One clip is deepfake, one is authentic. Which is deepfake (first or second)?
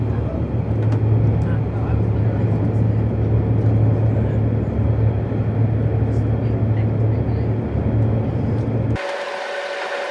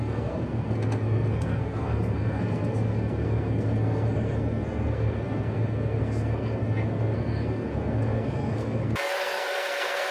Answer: second